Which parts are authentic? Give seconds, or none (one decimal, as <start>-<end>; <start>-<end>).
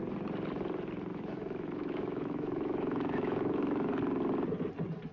0.0-1.1; 3.9-5.1